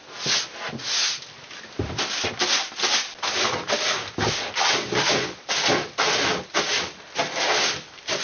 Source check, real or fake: real